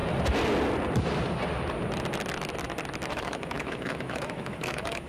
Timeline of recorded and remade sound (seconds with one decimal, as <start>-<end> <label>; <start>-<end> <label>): 0.0-3.1 recorded; 3.1-5.1 remade